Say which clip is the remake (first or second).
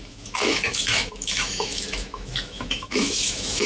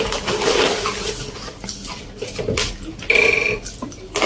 first